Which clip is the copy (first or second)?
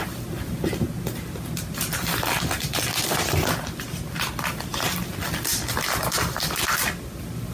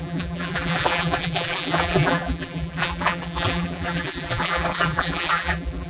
second